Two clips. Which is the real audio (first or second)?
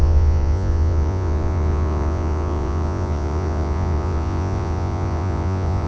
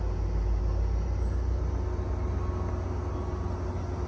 second